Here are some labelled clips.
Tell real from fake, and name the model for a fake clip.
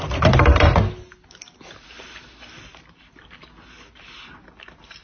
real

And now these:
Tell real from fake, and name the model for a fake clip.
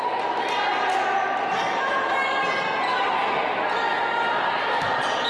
real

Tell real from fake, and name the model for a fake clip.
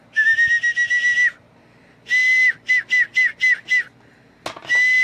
real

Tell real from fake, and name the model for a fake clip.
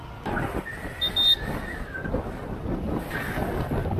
real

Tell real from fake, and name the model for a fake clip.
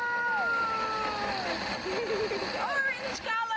real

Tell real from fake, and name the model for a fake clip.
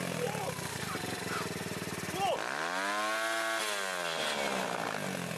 real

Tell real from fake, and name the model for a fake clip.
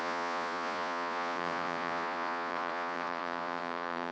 fake, vocoder, Vocos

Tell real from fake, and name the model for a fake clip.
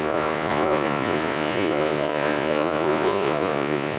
fake, vocoder, Vocos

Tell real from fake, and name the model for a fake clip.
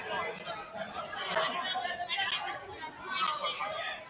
real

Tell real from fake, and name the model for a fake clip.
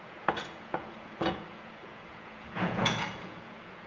fake, vocoder, Vocos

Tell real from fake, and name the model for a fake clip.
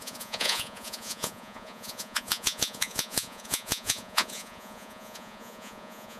fake, vocoder, Vocos